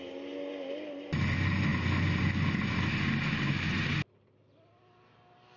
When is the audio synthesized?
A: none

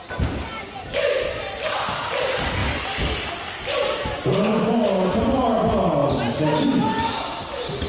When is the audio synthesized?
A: none